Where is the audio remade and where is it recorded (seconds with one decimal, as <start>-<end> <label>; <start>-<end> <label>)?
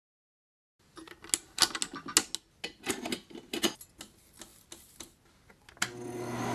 0.0-6.5 recorded